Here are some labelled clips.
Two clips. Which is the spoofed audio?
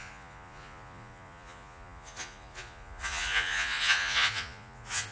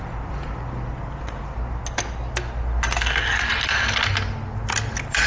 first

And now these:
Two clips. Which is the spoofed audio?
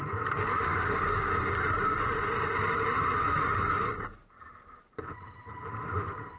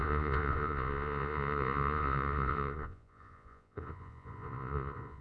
second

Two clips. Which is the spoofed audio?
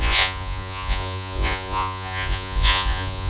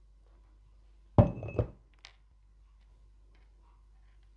first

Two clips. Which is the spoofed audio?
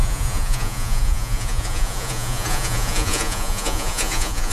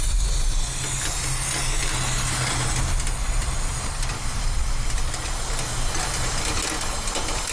first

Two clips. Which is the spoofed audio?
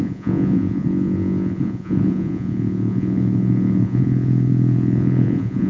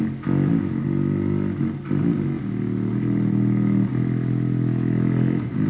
first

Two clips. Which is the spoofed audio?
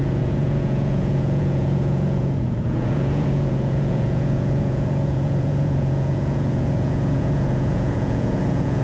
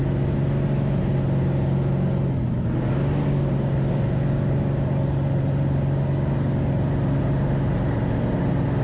first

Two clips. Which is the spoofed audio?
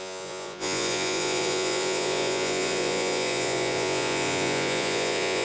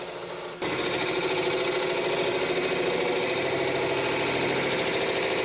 first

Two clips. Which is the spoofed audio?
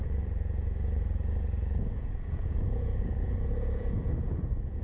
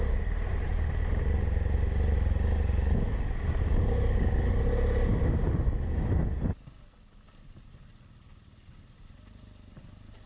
first